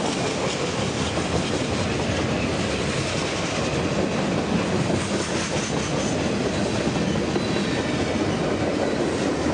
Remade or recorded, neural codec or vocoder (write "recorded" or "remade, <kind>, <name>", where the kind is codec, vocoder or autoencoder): recorded